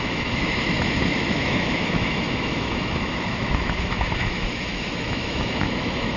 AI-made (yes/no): yes